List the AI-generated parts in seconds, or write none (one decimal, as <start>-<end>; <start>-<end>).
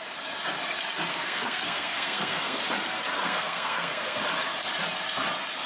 1.1-2.6; 3.2-4.2